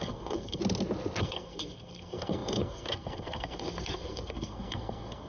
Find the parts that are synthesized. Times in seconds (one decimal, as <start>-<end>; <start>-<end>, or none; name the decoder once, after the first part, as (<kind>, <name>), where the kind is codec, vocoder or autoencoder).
0.0-0.6 (codec, SNAC); 1.2-5.3